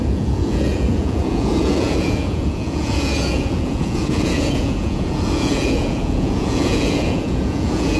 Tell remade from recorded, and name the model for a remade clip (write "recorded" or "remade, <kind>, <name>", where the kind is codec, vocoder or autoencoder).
remade, vocoder, Vocos